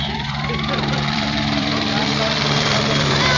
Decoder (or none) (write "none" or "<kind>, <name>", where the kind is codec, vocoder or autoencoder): vocoder, BigVGAN v2